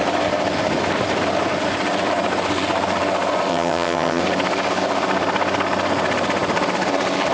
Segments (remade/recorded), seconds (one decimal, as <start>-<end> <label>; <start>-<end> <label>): 0.0-3.5 recorded; 3.5-4.2 remade; 4.2-7.3 recorded